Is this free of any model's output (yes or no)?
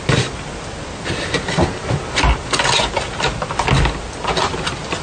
yes